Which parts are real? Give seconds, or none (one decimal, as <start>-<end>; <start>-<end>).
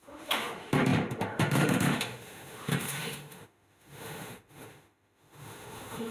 none